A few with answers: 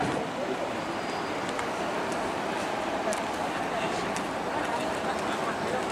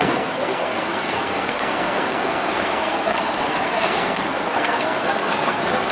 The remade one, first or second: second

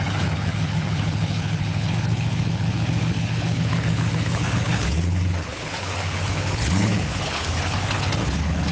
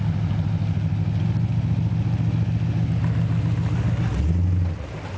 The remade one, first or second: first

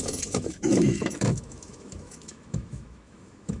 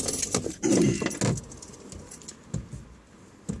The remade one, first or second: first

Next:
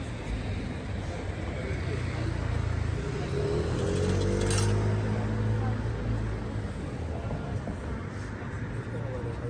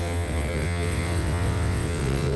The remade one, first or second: second